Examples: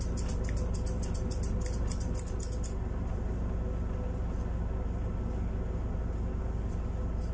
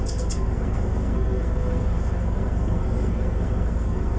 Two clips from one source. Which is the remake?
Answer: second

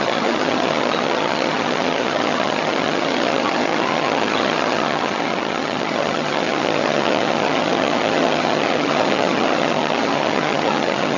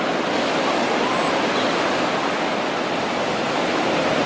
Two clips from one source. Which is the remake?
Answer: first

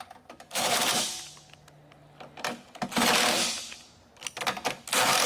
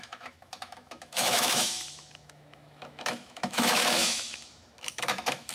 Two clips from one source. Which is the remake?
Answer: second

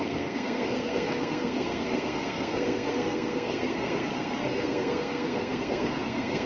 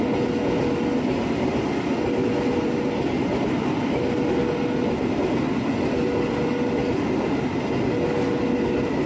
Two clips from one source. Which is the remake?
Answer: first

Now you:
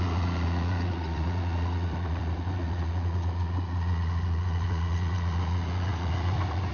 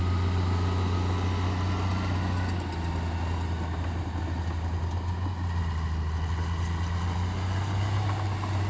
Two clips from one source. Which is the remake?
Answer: first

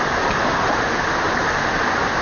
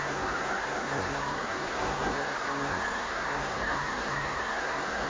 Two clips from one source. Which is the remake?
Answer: second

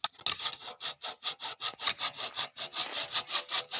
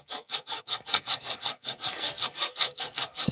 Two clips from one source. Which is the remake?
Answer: second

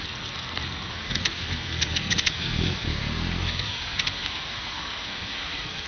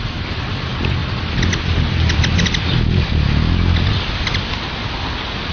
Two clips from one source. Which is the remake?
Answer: first